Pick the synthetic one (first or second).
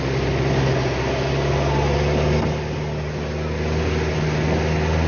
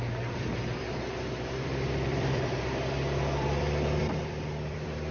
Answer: second